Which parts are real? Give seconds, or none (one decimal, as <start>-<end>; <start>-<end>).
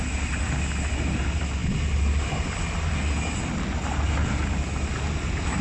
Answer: 0.0-5.6